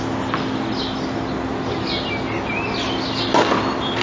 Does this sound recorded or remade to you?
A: recorded